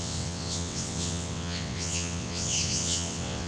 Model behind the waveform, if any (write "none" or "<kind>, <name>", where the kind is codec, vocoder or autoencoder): vocoder, WaveNeXt